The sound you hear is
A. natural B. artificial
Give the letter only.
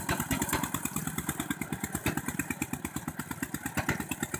A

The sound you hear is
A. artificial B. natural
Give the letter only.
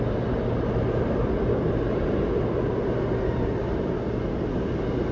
B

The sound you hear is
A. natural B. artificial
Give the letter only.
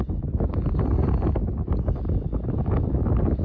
A